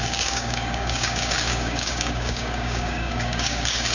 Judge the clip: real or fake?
fake